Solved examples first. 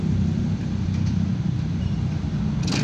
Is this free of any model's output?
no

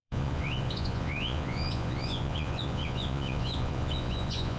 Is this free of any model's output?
no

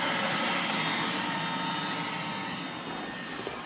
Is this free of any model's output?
yes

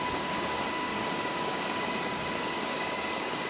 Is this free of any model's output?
no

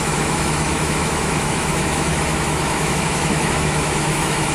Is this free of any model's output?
no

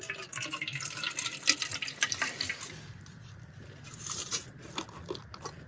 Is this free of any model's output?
yes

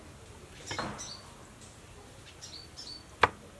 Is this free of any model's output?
yes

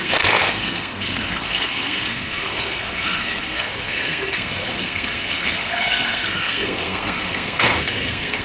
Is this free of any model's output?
no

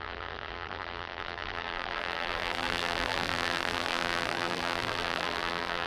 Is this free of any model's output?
no